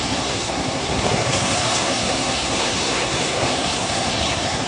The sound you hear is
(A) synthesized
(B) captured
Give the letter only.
A